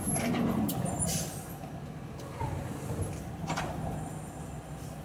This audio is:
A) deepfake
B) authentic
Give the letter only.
B